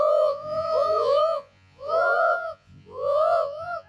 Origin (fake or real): fake